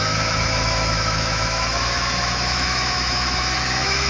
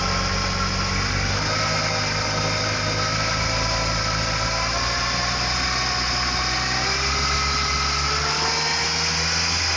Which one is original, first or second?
second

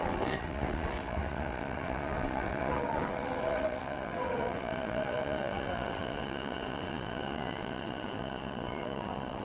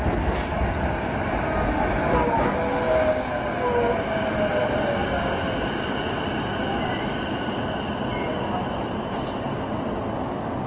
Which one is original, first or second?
second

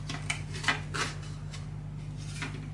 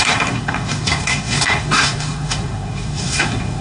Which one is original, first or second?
first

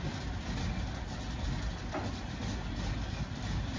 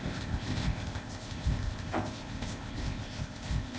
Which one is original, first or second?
first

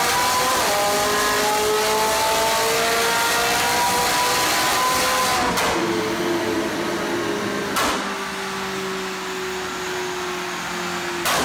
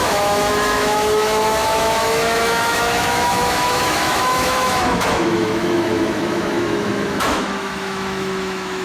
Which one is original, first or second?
first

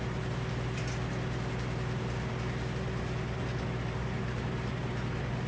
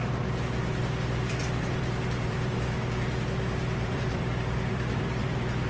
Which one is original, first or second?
first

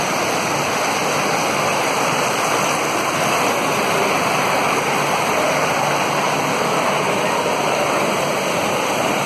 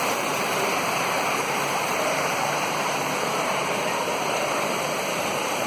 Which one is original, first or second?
first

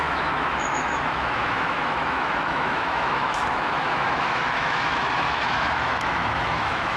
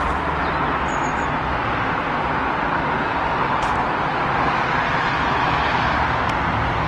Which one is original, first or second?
second